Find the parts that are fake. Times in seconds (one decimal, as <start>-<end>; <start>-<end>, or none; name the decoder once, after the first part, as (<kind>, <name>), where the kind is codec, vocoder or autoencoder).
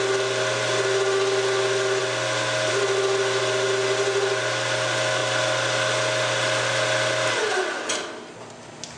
none